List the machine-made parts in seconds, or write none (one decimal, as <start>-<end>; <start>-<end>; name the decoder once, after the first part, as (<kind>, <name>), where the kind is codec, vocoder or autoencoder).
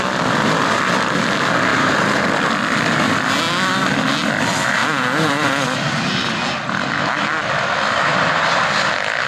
1.7-2.2 (vocoder, BigVGAN v2); 4.8-5.5